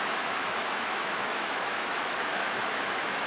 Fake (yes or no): yes